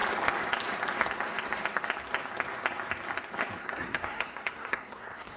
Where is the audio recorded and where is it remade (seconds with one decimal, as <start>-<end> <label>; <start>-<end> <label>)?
0.0-3.6 recorded; 3.6-5.4 remade